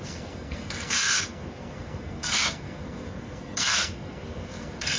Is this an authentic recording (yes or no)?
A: no